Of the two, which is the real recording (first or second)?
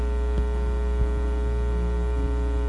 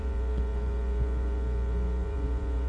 first